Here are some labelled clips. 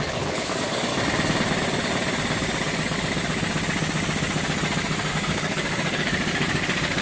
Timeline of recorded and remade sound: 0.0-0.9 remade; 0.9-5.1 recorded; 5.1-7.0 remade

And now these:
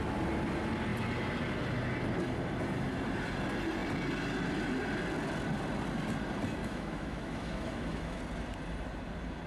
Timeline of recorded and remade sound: 0.0-6.6 recorded; 6.6-8.2 remade; 8.2-9.5 recorded

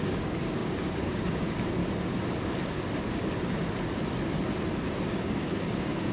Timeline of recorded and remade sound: 0.0-1.8 remade; 1.8-4.9 recorded; 4.9-6.1 remade

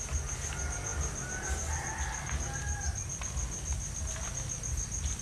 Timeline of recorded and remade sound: 0.0-5.2 recorded

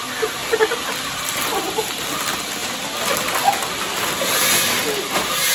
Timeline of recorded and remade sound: 0.0-5.5 recorded

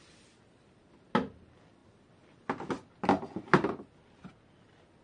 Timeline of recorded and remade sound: 0.0-5.0 recorded

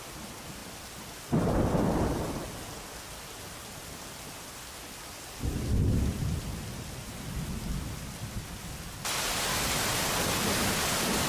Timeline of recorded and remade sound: 0.0-11.3 recorded